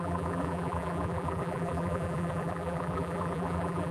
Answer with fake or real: fake